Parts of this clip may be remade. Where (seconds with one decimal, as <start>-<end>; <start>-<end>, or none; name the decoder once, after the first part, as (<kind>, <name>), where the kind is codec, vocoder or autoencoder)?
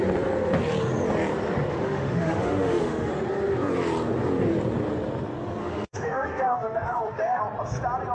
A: 1.7-3.1 (autoencoder, DAC-VAE); 5.6-7.4